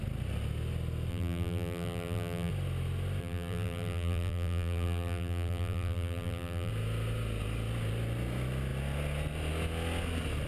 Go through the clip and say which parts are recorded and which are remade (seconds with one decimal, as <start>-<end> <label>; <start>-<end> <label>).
0.0-1.1 recorded; 1.1-2.5 remade; 2.5-3.2 recorded; 3.2-6.7 remade; 6.7-10.5 recorded